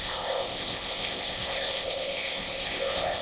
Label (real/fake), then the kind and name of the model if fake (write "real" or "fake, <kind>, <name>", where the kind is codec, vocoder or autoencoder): fake, codec, ZipCodec